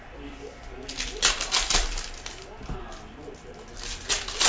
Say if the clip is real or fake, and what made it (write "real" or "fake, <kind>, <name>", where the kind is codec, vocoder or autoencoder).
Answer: real